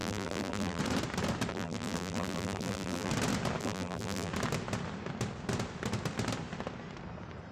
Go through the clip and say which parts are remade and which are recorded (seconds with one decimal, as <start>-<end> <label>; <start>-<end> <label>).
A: 0.0-0.8 remade; 0.8-1.5 recorded; 1.5-3.1 remade; 3.1-3.6 recorded; 3.6-4.3 remade; 4.3-7.5 recorded